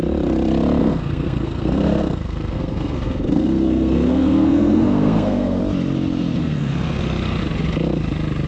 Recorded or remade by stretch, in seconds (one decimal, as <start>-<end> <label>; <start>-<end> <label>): 0.0-0.8 recorded; 0.8-5.6 remade; 5.6-6.4 recorded; 6.4-7.0 remade; 7.0-8.5 recorded